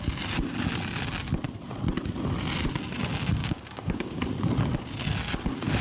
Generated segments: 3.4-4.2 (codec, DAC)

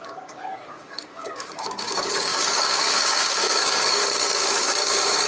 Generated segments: 0.0-5.3 (codec, DAC)

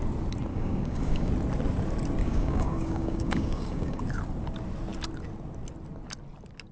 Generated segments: 0.5-1.3 (codec, DAC); 2.2-4.0

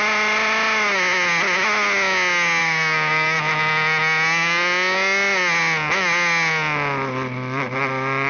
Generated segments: 2.6-3.4 (codec, DAC)

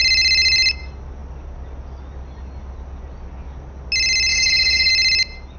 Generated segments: 4.3-4.9 (codec, DAC)

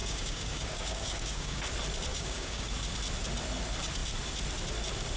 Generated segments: 0.0-1.6 (codec, DAC); 2.1-2.7